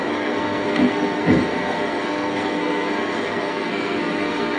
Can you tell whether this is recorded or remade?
remade